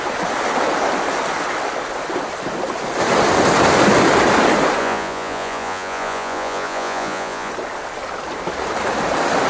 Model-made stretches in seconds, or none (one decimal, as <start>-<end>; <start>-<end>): 4.8-7.5